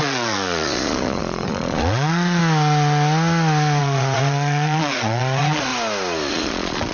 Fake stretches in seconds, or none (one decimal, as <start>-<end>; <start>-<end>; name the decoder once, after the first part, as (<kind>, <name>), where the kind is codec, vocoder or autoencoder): 0.0-2.4 (vocoder, Vocos); 3.8-5.7; 6.3-6.9